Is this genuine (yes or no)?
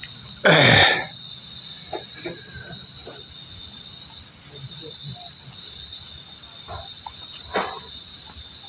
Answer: yes